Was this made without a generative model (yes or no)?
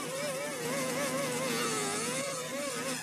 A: yes